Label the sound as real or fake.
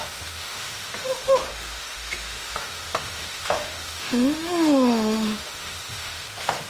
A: fake